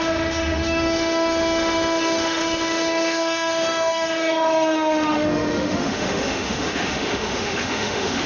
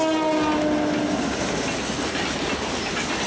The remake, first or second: first